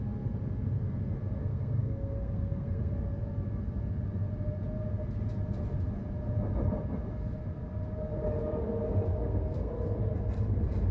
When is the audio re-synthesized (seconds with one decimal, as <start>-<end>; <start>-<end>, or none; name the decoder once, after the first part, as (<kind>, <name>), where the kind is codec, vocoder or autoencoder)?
1.4-2.9 (codec, SNAC); 9.1-9.7